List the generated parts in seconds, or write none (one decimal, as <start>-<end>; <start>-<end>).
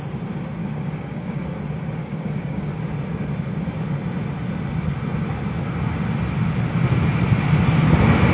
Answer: 0.6-1.6; 2.0-2.8